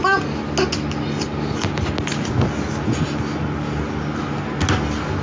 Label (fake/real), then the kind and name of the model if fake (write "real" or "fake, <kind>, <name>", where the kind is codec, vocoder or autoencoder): real